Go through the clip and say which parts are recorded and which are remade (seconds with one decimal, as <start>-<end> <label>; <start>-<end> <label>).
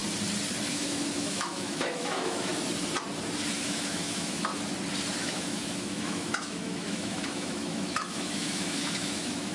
0.0-0.7 recorded; 0.7-2.5 remade; 2.5-3.6 recorded; 3.6-4.5 remade; 4.5-5.2 recorded; 5.2-9.5 remade